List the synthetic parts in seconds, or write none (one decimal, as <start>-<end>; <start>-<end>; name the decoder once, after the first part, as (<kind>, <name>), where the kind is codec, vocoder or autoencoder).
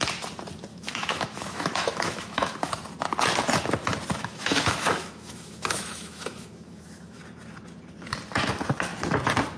0.7-2.7 (autoencoder, DAC-VAE); 4.2-7.2